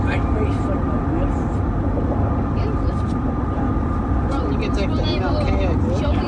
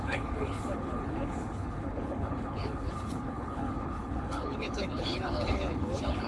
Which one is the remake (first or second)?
second